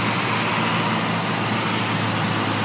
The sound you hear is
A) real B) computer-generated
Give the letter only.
A